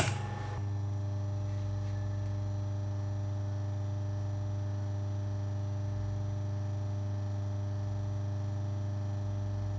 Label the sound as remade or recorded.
recorded